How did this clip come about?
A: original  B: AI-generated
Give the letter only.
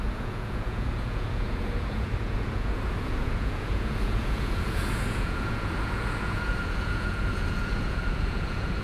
B